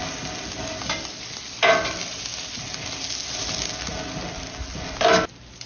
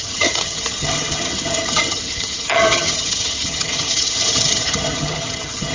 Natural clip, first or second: first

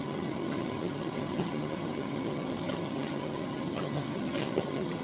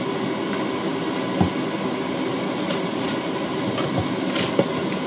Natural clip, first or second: second